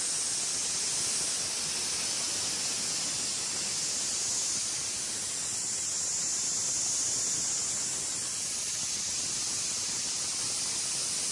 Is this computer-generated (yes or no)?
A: no